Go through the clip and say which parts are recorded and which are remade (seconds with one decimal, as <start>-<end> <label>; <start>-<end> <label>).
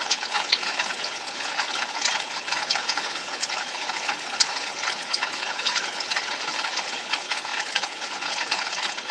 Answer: 0.0-9.1 remade